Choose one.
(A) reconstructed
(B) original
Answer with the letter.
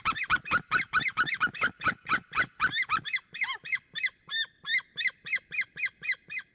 B